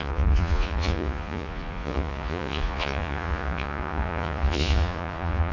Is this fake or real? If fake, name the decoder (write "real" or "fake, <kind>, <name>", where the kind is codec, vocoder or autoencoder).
fake, vocoder, Vocos